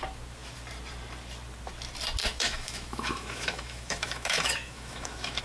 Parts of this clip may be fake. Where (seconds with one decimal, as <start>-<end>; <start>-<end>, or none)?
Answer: 2.2-5.4